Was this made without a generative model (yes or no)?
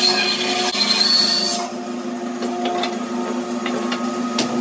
yes